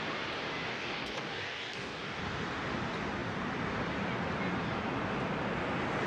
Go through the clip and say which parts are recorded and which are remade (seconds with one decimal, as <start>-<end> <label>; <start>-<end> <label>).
0.0-0.7 recorded; 0.7-2.2 remade; 2.2-6.1 recorded